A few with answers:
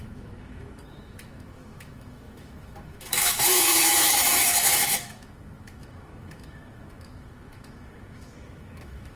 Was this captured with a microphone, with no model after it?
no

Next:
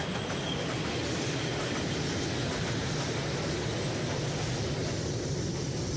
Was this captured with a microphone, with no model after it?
yes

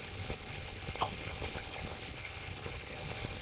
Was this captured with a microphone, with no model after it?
no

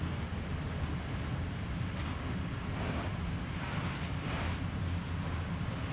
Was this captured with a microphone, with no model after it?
yes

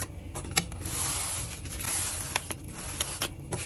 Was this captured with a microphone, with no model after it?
yes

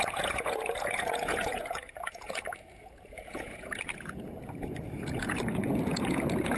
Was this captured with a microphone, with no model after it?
no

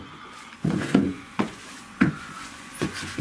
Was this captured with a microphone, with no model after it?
no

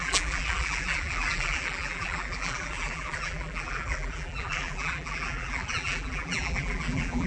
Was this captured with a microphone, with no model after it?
no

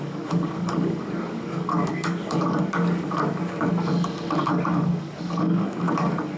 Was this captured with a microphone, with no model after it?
no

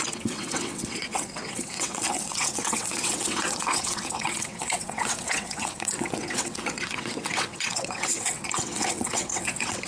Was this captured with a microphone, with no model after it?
no